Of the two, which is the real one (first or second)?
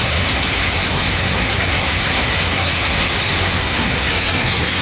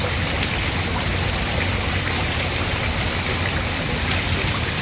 second